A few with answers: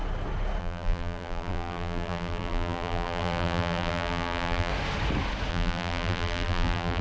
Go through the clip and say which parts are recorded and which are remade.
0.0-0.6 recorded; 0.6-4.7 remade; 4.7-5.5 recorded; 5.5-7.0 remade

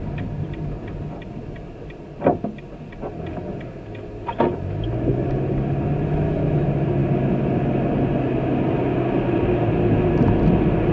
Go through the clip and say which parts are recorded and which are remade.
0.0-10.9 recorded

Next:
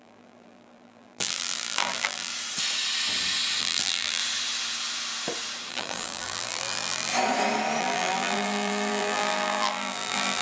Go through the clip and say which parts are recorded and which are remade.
0.0-2.3 remade; 2.3-3.6 recorded; 3.6-4.2 remade; 4.2-5.7 recorded; 5.7-7.1 remade; 7.1-7.8 recorded; 7.8-10.4 remade